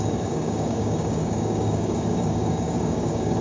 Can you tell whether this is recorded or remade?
remade